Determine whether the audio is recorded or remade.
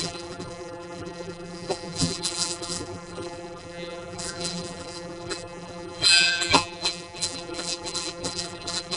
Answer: remade